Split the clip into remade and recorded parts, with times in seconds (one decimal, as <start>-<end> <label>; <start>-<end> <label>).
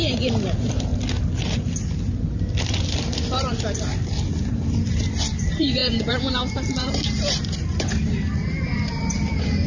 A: 0.0-0.9 remade; 0.9-2.6 recorded; 2.6-3.9 remade; 3.9-4.5 recorded; 4.5-9.7 remade